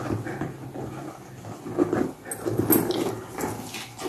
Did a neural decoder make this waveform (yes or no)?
no